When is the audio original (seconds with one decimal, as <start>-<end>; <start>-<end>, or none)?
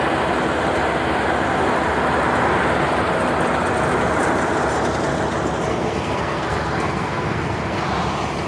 0.0-5.7; 7.8-8.5